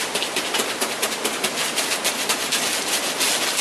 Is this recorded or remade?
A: recorded